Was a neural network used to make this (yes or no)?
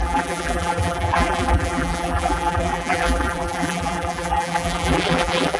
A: yes